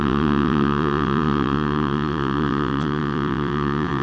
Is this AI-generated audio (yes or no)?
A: yes